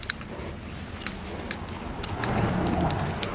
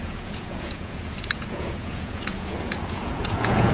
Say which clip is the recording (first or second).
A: first